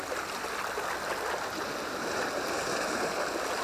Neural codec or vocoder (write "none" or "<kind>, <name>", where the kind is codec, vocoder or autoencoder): none